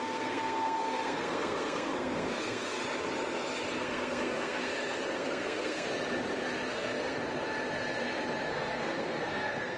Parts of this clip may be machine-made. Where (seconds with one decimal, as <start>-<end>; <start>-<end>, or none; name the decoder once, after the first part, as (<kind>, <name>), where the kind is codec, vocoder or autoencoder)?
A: 0.0-2.8 (codec, SNAC); 3.7-5.9; 6.7-7.2; 8.5-9.8